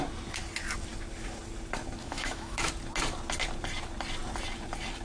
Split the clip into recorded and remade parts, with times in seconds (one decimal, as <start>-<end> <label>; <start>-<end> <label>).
0.0-2.0 recorded; 2.0-2.7 remade; 2.7-5.0 recorded